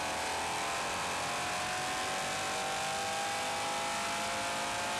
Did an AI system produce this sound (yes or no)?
no